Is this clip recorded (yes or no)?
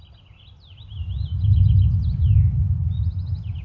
yes